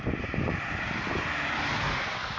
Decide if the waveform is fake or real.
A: real